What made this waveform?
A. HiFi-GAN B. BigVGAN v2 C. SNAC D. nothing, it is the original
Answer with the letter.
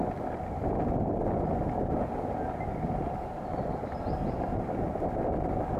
D